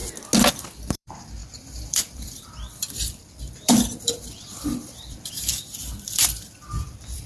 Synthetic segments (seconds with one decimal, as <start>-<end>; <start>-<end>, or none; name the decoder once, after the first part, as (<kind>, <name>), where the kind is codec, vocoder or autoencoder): 0.5-7.3 (vocoder, BigVGAN v2)